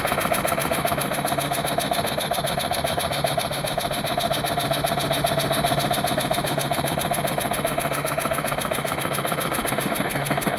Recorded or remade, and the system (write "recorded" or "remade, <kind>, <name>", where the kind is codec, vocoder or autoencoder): remade, autoencoder, DAC-VAE